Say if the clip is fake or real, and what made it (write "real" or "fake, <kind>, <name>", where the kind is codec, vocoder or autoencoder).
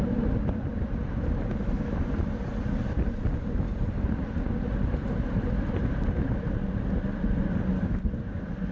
real